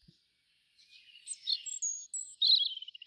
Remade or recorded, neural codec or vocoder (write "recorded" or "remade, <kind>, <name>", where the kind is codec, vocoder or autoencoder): recorded